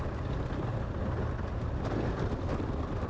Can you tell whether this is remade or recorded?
recorded